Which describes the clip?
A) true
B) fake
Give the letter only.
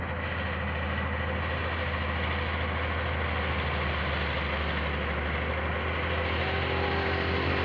A